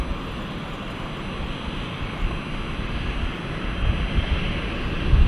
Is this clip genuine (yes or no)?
yes